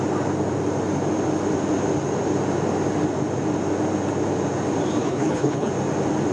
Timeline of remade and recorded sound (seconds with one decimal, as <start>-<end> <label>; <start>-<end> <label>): 0.0-5.0 recorded; 5.0-5.7 remade; 5.7-6.3 recorded